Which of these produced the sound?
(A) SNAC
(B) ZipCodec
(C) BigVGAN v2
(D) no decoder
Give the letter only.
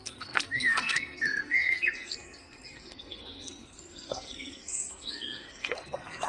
A